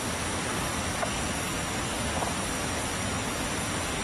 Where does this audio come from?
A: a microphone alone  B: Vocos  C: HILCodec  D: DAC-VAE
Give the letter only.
A